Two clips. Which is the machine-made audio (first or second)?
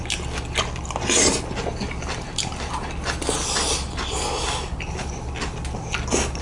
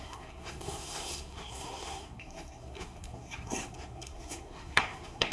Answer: second